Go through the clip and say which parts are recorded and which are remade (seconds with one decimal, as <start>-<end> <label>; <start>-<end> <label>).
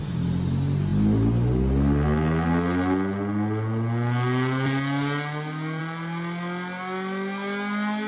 0.0-8.1 recorded